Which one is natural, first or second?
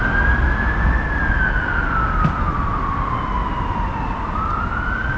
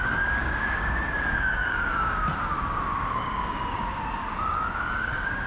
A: first